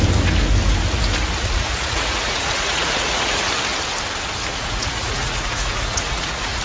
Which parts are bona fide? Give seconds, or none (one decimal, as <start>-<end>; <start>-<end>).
0.0-1.4; 3.5-4.5

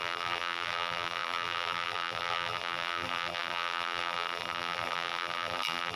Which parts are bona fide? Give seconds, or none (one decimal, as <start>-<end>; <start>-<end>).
none

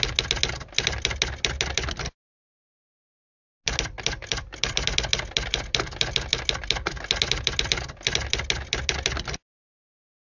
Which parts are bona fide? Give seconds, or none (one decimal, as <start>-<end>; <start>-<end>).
0.0-10.3

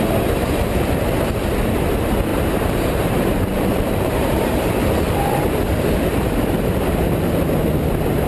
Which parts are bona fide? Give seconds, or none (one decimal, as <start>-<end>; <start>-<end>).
0.0-2.3; 4.7-6.1; 7.4-8.3

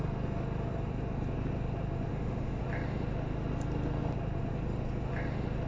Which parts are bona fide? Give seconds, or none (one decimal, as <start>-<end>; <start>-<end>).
0.0-2.1; 2.6-5.7